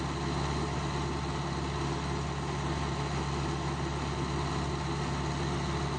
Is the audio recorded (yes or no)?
yes